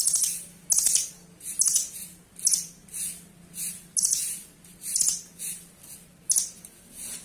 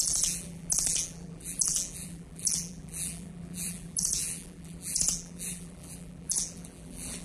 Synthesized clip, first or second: second